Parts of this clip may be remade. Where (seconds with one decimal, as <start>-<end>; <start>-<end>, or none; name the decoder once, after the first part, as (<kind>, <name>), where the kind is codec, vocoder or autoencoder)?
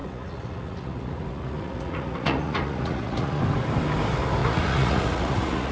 0.0-3.4 (vocoder, Vocos); 4.4-5.7